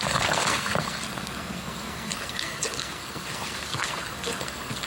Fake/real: fake